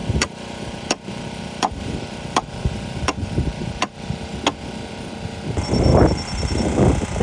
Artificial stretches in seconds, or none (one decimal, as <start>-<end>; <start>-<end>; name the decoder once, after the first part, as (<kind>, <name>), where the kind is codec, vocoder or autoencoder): 0.0-4.3 (vocoder, BigVGAN v2)